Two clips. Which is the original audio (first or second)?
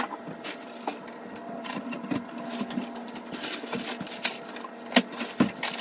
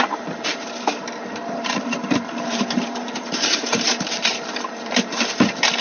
first